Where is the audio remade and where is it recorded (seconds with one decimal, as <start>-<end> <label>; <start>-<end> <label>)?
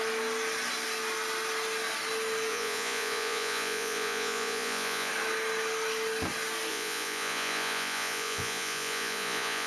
0.0-2.5 recorded; 2.5-5.1 remade; 5.1-6.7 recorded; 6.7-9.7 remade